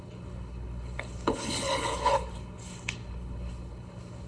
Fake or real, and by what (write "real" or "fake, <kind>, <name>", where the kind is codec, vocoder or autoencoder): fake, codec, HILCodec